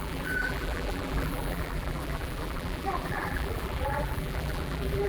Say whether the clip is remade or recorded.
remade